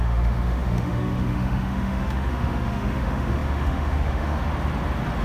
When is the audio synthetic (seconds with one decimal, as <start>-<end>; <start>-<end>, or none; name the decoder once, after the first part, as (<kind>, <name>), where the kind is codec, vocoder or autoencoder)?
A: 0.0-4.5 (autoencoder, DAC-VAE)